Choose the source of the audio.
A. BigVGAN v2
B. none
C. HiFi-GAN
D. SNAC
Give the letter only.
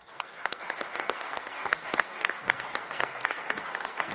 D